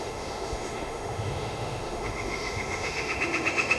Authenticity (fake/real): fake